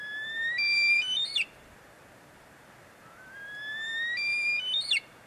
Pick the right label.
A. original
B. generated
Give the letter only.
B